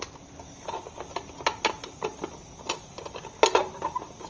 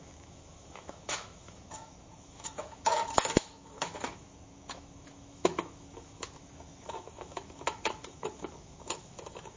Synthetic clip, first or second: second